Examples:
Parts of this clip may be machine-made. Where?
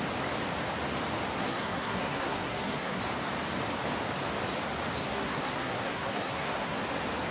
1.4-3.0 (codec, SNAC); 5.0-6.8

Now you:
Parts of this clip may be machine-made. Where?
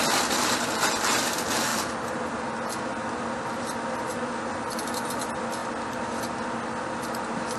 none